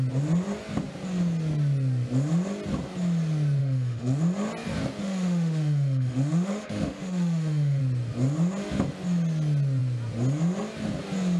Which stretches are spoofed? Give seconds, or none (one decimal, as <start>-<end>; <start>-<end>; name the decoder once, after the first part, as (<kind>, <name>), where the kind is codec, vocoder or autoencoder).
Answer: 3.6-4.2 (autoencoder, DAC-VAE); 5.0-7.8